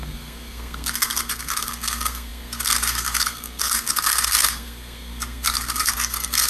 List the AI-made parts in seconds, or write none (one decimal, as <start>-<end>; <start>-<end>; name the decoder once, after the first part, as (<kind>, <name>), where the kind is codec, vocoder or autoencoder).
0.0-6.5 (codec, SNAC)